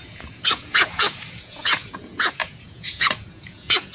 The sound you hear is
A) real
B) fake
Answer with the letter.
B